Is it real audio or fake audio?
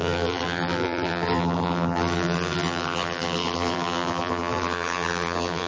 fake